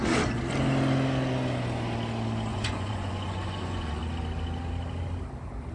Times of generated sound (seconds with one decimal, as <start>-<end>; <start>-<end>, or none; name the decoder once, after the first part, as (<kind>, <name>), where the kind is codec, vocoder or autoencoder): 2.5-4.0 (vocoder, Vocos)